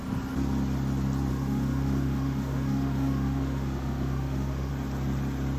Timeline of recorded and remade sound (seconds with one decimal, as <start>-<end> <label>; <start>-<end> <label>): 0.0-1.3 recorded; 1.3-4.7 remade; 4.7-5.6 recorded

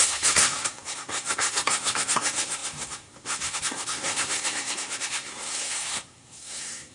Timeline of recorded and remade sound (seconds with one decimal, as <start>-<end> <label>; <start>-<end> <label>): 0.0-6.9 remade

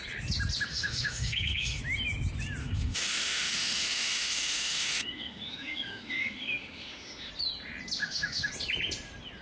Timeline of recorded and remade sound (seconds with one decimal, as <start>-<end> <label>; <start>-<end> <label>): 0.0-0.7 recorded; 0.7-1.8 remade; 1.8-2.6 recorded; 2.6-7.3 remade; 7.3-8.0 recorded; 8.0-8.5 remade; 8.5-9.4 recorded

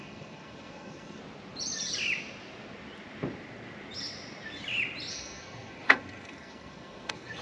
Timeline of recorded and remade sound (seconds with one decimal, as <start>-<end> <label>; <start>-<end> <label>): 0.0-1.2 remade; 1.2-5.1 recorded; 5.1-7.4 remade